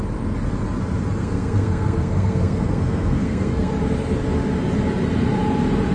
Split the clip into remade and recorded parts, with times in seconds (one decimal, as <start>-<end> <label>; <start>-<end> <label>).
0.0-1.2 recorded; 1.2-3.7 remade; 3.7-5.9 recorded